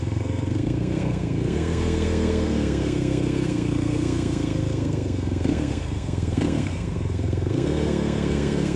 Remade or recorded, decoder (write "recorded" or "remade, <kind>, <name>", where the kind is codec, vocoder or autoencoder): remade, codec, SNAC